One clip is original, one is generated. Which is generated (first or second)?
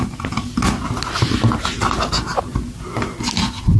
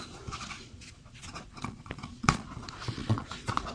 second